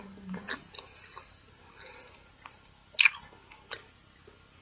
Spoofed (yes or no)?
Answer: no